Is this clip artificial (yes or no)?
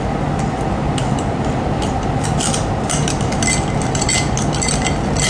no